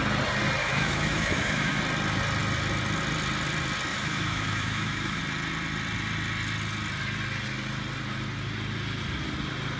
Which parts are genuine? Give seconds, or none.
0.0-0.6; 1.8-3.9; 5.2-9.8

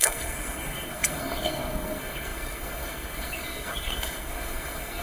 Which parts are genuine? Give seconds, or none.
none

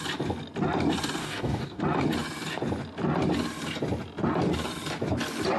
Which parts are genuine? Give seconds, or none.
0.0-1.2; 1.8-5.6

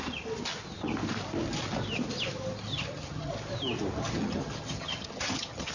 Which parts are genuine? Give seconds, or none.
0.0-2.7; 3.3-4.0